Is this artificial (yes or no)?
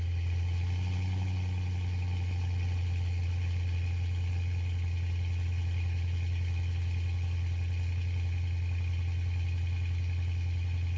no